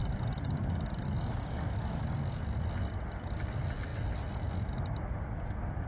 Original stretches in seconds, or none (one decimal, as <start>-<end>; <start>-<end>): 0.0-5.9